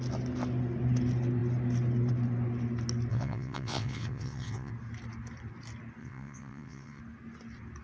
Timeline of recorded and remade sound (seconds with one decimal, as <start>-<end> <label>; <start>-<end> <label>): 0.0-3.1 recorded; 3.1-4.7 remade; 4.7-6.0 recorded; 6.0-7.0 remade; 7.0-7.8 recorded